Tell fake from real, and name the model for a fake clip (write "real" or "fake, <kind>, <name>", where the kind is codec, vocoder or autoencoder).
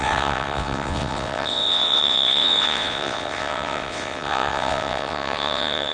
fake, vocoder, WaveNeXt